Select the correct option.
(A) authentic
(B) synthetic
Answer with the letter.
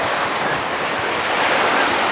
A